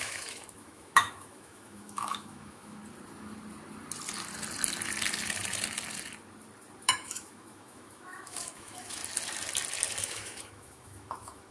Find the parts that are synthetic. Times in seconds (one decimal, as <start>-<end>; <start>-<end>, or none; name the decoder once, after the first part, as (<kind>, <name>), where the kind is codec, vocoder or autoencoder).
0.0-2.8 (autoencoder, DAC-VAE); 6.8-9.0; 10.0-11.5